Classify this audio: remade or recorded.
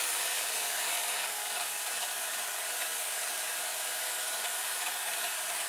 remade